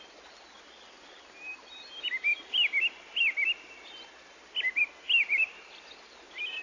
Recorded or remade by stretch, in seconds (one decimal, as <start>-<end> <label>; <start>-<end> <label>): 0.0-6.6 recorded